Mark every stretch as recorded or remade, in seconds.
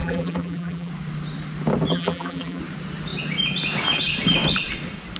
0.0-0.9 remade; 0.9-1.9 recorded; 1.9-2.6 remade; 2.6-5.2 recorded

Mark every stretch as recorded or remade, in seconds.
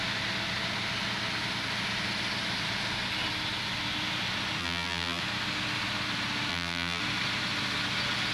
0.0-4.6 recorded; 4.6-5.2 remade; 5.2-6.5 recorded; 6.5-7.0 remade; 7.0-8.3 recorded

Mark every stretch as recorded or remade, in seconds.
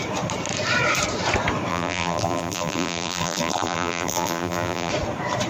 0.0-1.7 recorded; 1.7-4.9 remade; 4.9-5.5 recorded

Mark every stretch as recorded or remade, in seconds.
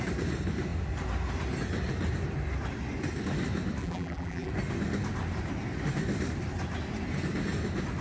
0.0-3.8 recorded; 3.8-4.5 remade; 4.5-8.0 recorded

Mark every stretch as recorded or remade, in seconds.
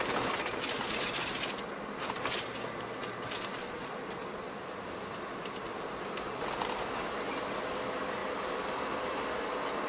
0.0-8.2 recorded; 8.2-9.2 remade; 9.2-9.9 recorded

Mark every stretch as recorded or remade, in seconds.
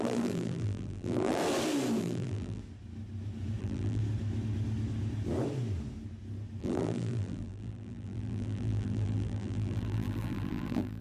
0.0-1.4 remade; 1.4-2.0 recorded; 2.0-2.6 remade; 2.6-3.6 recorded; 3.6-4.0 remade; 4.0-6.6 recorded; 6.6-11.0 remade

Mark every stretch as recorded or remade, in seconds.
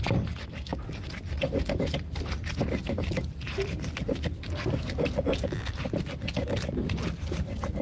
0.0-7.8 recorded